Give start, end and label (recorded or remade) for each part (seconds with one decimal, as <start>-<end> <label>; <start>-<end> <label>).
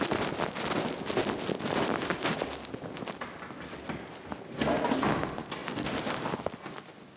0.0-7.2 recorded